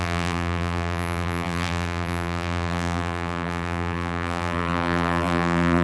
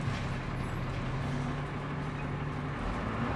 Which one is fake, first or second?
first